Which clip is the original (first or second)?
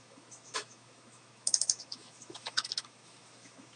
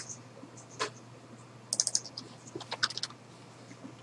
second